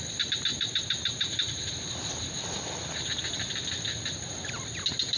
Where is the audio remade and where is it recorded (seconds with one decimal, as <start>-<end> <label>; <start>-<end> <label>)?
0.0-0.5 recorded; 0.5-1.7 remade; 1.7-5.2 recorded